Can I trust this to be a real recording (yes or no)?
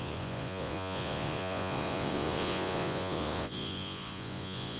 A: no